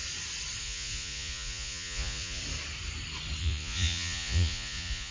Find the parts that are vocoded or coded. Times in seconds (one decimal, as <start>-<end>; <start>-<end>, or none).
0.6-2.4; 3.4-5.1